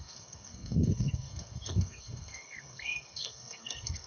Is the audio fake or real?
fake